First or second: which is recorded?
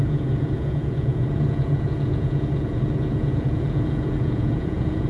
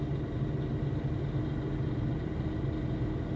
second